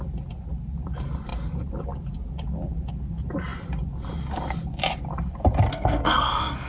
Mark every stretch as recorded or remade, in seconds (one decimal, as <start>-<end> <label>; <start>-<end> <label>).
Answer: 0.0-5.7 recorded; 5.7-6.7 remade